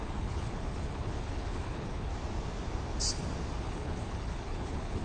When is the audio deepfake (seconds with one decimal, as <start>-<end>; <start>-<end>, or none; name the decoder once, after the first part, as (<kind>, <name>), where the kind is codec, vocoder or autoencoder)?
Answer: 0.0-2.1 (codec, HILCodec); 3.6-5.0